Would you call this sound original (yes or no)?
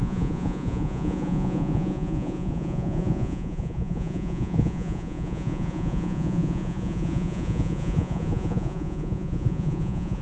no